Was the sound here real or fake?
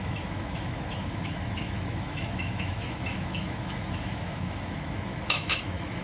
fake